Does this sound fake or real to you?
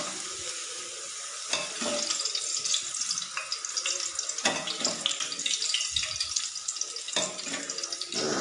real